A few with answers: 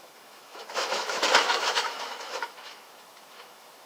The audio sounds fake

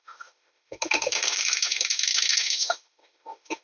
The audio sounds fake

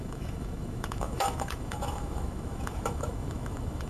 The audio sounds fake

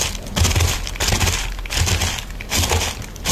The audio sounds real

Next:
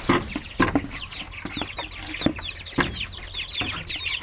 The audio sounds real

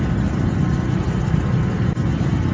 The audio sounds real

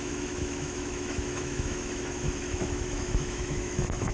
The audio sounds fake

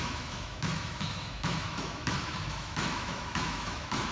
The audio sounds fake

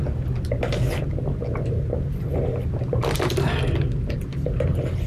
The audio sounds real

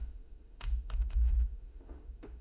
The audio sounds fake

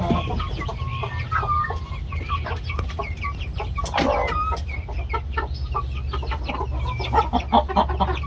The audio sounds real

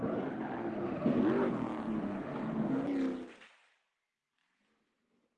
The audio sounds real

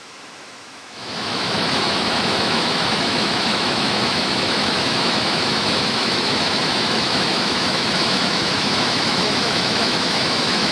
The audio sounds fake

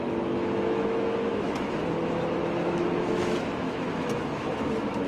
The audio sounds fake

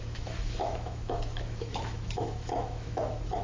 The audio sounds fake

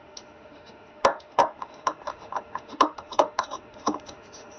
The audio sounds fake